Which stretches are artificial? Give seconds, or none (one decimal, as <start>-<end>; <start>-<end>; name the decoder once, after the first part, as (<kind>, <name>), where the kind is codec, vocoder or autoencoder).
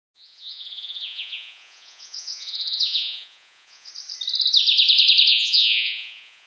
0.0-3.9 (vocoder, Vocos); 5.3-6.5